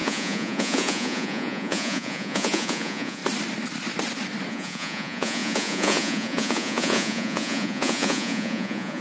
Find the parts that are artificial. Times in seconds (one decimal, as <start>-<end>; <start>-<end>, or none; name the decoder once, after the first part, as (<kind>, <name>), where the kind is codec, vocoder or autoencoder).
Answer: 0.0-3.2 (vocoder, Vocos); 4.5-9.0